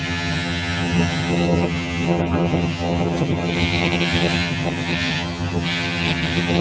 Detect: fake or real fake